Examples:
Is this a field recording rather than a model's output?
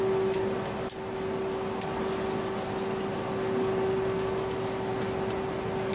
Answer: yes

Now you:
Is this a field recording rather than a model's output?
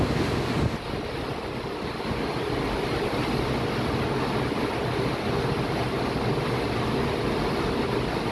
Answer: yes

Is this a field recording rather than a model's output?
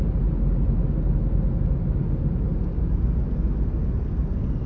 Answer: yes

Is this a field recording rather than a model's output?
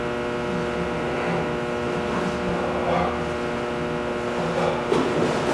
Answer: yes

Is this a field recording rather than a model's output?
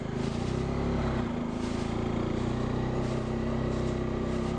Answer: yes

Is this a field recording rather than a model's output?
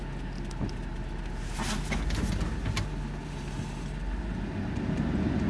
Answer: yes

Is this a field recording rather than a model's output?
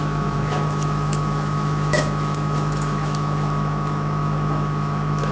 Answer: no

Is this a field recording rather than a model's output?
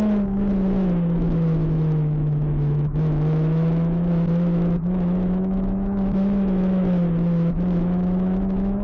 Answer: no